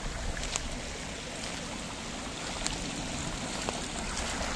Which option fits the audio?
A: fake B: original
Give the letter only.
B